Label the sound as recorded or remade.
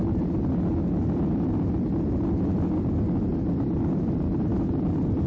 recorded